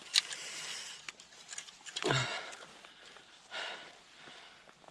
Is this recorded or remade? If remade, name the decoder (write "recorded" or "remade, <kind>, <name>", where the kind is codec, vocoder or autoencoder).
recorded